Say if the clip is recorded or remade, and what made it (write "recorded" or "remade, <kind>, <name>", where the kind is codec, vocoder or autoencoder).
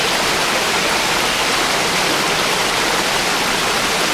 recorded